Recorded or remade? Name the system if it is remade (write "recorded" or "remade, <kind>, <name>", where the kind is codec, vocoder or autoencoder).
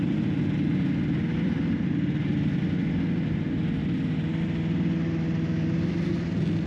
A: recorded